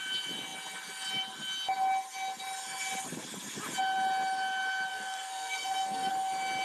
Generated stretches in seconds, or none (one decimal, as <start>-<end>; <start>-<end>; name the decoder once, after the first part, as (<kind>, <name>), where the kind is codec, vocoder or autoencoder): 4.9-6.1 (codec, SNAC)